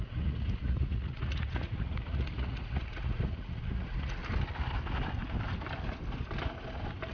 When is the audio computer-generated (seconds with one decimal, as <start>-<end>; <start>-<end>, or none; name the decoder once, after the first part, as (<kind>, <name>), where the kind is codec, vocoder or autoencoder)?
0.0-4.2 (vocoder, Vocos)